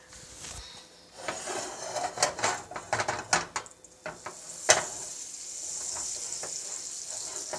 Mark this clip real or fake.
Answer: real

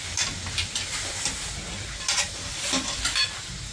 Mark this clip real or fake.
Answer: real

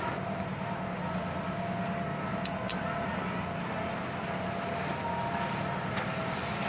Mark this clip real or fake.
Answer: real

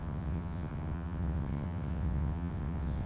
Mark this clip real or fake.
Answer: fake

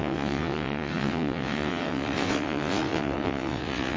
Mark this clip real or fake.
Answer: fake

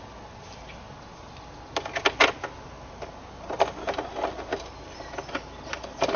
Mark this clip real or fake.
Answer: real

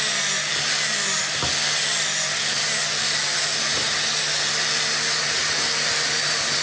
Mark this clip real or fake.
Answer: real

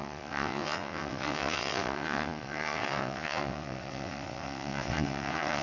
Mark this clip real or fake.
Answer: fake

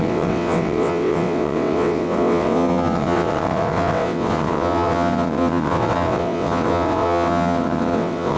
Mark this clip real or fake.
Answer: fake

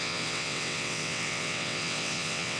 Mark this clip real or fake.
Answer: fake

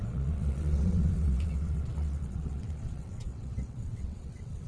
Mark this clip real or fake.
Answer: fake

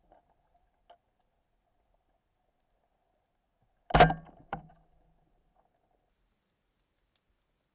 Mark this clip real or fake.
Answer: real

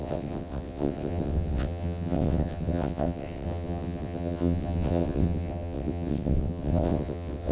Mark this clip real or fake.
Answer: fake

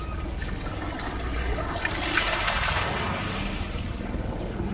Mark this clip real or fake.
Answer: real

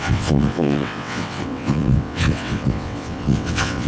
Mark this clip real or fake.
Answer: fake